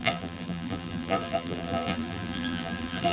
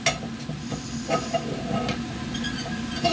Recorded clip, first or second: second